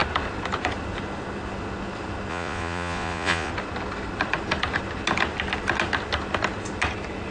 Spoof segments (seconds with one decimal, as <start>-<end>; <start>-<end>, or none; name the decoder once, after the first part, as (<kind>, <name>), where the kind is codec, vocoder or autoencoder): 2.3-3.5 (vocoder, Vocos)